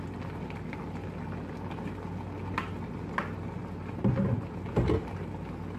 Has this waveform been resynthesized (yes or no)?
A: no